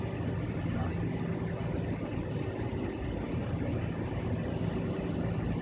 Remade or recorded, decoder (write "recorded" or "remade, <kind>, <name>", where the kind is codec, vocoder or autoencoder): recorded